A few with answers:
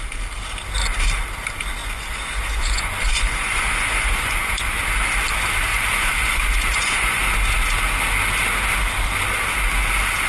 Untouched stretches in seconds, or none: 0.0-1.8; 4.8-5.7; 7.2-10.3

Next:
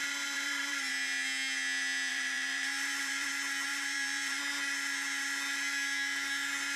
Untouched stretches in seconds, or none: 0.9-2.1; 3.3-3.7; 4.4-6.8

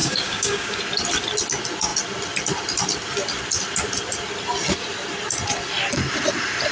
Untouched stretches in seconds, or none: 0.8-6.7